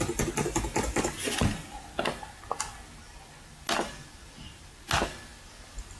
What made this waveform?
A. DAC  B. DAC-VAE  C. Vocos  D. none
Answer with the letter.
D